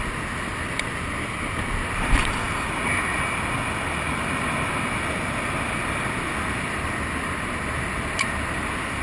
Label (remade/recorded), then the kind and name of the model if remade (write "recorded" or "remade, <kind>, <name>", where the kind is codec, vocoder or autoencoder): recorded